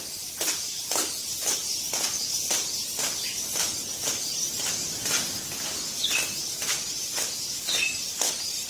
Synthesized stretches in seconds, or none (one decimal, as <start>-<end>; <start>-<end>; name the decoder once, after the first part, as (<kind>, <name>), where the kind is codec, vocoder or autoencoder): none